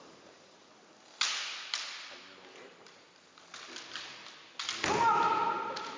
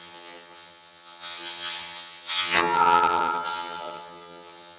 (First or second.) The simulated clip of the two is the second